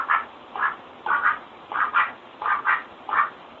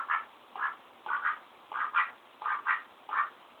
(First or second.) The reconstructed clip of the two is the first